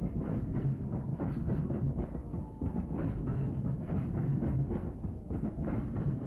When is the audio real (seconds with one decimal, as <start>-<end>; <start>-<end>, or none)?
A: none

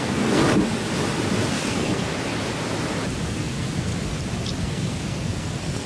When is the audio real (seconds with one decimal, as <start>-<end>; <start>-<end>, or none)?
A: 0.4-1.5; 2.1-3.3; 3.9-4.6

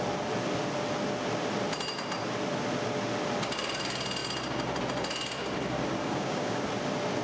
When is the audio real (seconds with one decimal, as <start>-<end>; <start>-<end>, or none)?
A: 0.0-6.0; 6.6-7.2